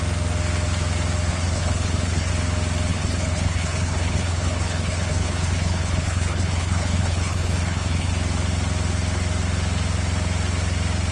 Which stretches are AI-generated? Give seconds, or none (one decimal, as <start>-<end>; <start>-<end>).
1.3-2.3; 2.9-8.1